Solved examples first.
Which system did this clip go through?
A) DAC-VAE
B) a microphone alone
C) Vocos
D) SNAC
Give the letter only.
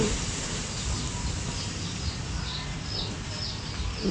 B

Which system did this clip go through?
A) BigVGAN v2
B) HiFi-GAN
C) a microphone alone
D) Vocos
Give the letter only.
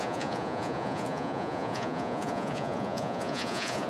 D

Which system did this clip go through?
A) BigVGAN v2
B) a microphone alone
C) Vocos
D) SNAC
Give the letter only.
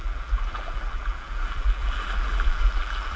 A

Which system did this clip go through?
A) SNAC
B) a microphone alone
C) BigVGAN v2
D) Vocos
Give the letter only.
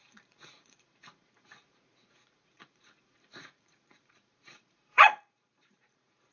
D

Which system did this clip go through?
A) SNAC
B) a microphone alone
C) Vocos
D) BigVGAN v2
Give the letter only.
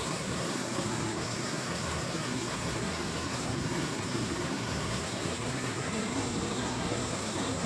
A